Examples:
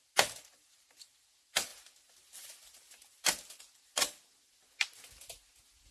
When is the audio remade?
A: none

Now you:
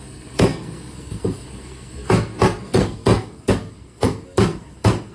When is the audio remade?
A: 0.0-5.1 (codec, SNAC)

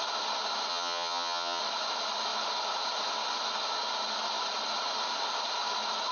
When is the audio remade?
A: 0.7-1.6 (vocoder, HiFi-GAN)

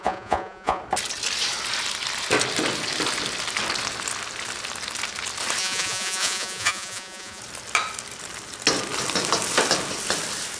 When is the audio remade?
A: 0.0-0.8 (vocoder, Vocos); 5.6-7.4

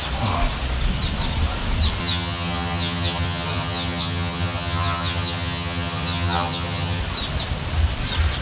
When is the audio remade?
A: 2.0-7.0 (vocoder, HiFi-GAN)

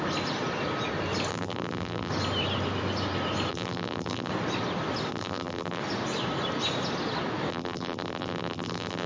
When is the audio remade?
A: 1.3-2.1 (vocoder, BigVGAN v2); 3.5-4.3; 5.1-5.8; 7.5-9.1